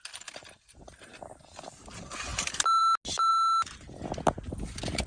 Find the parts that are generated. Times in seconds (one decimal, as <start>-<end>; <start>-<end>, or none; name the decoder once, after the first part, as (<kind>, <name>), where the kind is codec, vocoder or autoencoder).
none

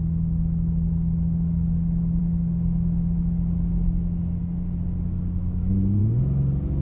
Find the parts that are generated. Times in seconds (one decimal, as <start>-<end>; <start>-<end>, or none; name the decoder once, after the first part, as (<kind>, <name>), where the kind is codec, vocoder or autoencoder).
none

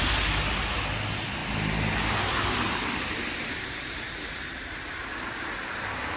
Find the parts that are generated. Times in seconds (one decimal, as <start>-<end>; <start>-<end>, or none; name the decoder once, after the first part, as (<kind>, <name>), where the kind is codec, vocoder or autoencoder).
none

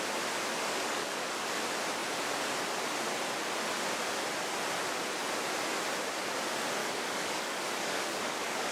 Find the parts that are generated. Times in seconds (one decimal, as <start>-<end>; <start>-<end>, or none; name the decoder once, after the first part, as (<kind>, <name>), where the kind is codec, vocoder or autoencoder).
0.5-1.6 (codec, DAC); 6.8-8.7